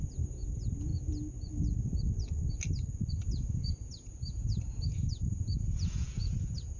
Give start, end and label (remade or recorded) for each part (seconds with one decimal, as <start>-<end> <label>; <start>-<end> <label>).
0.0-0.9 remade; 0.9-3.1 recorded; 3.1-6.8 remade